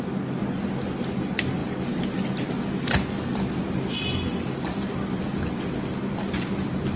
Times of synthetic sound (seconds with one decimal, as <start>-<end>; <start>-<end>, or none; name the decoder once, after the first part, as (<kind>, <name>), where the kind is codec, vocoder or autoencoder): none